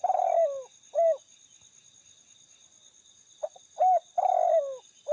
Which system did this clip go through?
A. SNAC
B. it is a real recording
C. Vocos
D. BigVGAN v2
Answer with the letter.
B